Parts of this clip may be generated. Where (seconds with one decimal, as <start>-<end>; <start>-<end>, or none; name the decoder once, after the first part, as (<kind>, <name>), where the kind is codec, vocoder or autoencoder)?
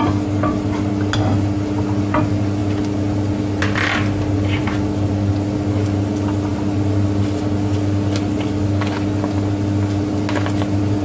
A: none